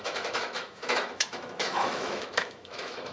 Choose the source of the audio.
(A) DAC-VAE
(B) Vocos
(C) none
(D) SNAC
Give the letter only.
A